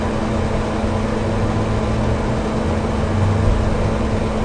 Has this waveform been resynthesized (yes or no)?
no